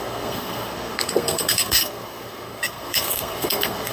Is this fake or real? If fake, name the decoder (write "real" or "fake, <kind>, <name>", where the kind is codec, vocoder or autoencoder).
fake, codec, SNAC